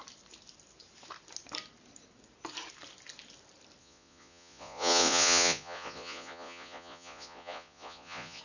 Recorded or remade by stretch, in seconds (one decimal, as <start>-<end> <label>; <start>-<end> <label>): 0.0-3.8 recorded; 3.8-8.4 remade